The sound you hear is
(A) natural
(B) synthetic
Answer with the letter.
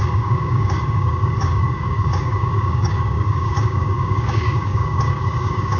B